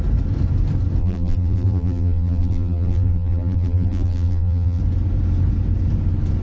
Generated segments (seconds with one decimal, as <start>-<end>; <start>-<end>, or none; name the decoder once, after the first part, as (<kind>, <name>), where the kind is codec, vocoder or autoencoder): 1.0-4.8 (vocoder, BigVGAN v2)